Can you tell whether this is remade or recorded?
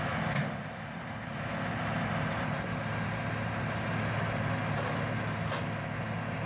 recorded